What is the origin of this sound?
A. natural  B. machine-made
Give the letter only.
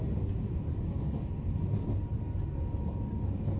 A